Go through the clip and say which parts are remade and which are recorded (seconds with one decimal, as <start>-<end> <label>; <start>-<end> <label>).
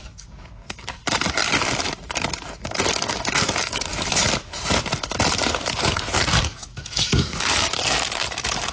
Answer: 0.0-1.0 remade; 1.0-2.5 recorded; 2.5-3.9 remade; 3.9-6.4 recorded; 6.4-8.7 remade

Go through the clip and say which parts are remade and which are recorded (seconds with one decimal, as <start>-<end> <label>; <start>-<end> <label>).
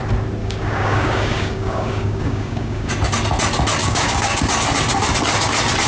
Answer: 0.0-0.4 recorded; 0.4-2.9 remade; 2.9-3.8 recorded; 3.8-4.4 remade; 4.4-5.9 recorded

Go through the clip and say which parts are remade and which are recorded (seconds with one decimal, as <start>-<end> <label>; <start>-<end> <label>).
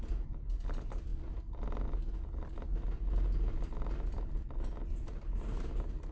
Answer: 0.0-6.1 recorded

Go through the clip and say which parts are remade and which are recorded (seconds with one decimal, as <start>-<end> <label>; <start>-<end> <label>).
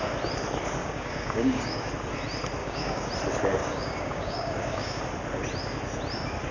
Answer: 0.0-0.8 recorded; 0.8-1.9 remade; 1.9-2.6 recorded; 2.6-3.1 remade; 3.1-3.6 recorded; 3.6-5.0 remade; 5.0-6.5 recorded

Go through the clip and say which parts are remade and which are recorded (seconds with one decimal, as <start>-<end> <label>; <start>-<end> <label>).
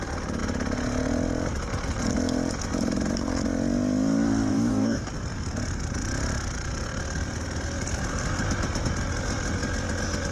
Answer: 0.0-4.5 recorded; 4.5-5.1 remade; 5.1-10.3 recorded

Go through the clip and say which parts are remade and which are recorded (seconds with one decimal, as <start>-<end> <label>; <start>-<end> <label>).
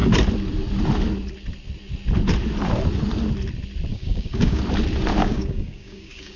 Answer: 0.0-3.9 recorded; 3.9-4.6 remade; 4.6-5.2 recorded; 5.2-6.4 remade